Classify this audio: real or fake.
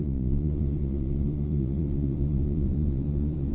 fake